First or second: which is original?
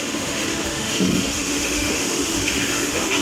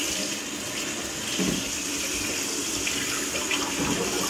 second